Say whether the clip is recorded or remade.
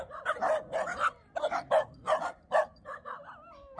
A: recorded